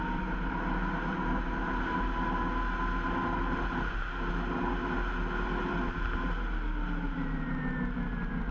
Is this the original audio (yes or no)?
yes